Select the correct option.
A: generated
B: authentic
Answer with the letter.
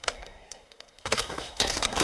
A